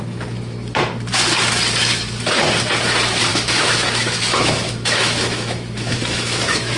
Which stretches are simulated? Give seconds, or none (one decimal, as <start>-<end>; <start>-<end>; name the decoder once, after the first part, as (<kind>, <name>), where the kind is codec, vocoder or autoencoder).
3.3-6.8 (autoencoder, DAC-VAE)